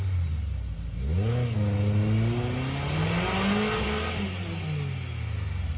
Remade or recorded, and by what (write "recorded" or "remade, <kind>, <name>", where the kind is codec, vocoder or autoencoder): recorded